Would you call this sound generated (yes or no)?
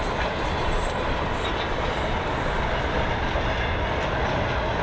no